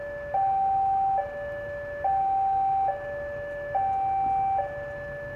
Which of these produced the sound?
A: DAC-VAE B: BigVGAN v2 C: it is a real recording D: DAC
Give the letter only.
C